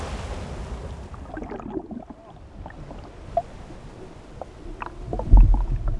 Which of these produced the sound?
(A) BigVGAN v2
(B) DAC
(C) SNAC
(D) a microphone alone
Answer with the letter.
D